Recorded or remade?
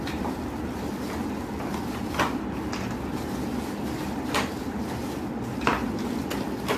recorded